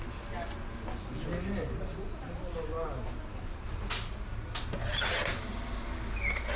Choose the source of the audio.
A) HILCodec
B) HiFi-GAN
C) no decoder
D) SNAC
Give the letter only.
C